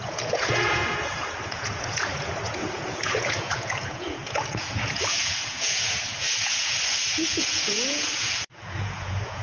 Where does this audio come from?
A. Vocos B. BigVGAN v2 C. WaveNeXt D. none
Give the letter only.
A